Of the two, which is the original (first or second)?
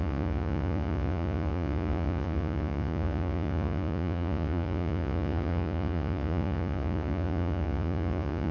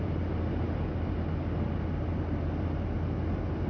second